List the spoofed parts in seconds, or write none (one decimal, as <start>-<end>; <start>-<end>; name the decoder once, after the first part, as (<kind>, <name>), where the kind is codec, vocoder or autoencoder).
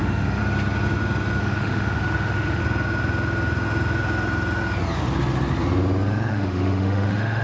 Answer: 0.0-0.4 (autoencoder, DAC-VAE); 1.4-2.6; 6.3-7.4